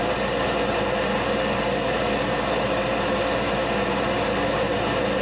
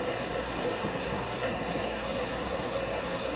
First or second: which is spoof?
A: second